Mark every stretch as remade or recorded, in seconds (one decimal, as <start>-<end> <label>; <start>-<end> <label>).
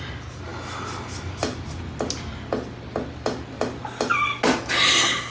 0.0-5.3 recorded